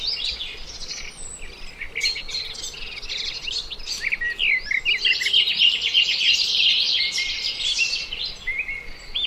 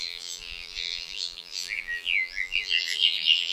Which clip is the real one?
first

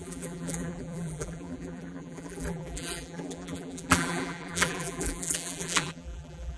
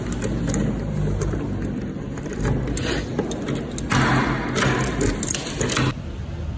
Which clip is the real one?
second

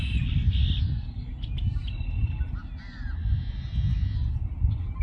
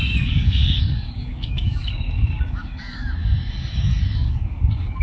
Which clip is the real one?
first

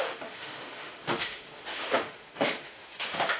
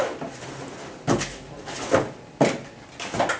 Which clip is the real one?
second